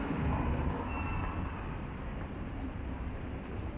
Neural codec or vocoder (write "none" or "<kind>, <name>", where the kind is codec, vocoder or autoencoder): none